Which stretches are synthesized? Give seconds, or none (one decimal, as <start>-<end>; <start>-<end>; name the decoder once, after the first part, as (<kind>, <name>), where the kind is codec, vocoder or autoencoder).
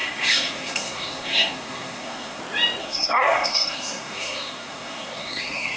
0.0-2.4 (codec, SNAC); 2.8-5.8